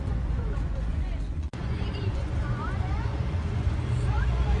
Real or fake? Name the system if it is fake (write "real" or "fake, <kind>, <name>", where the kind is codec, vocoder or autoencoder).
fake, vocoder, Vocos